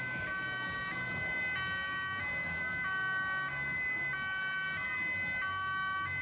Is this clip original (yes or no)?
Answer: yes